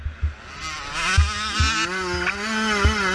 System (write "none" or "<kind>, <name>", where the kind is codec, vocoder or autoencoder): none